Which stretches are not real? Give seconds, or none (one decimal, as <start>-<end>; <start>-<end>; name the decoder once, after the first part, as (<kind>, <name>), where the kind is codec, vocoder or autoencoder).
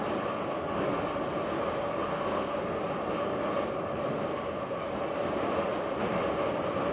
2.1-2.8 (codec, SNAC)